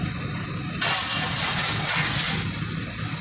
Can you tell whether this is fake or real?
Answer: real